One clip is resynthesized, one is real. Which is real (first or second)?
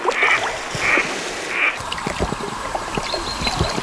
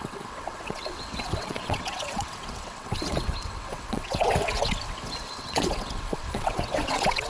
first